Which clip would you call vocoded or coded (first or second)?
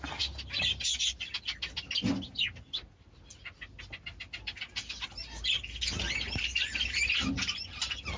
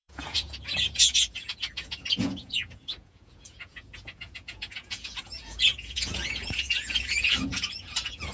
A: second